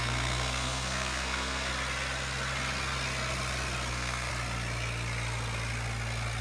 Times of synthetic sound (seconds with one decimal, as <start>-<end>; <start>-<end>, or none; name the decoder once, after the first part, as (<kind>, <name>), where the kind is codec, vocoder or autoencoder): 0.0-1.7 (codec, SNAC); 3.9-4.3